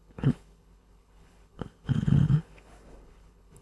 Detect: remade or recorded remade